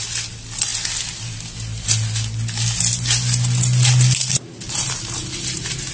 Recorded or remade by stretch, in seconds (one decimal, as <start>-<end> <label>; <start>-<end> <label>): 0.0-5.9 recorded